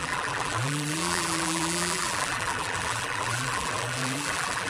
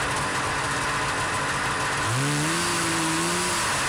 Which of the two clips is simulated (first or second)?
first